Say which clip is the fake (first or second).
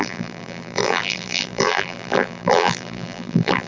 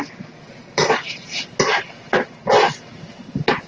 first